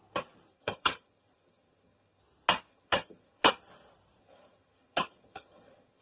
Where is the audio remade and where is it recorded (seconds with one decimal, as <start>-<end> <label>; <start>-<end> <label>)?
0.0-0.5 recorded; 0.5-2.2 remade; 2.2-2.7 recorded; 2.7-3.5 remade; 3.5-4.2 recorded; 4.2-6.0 remade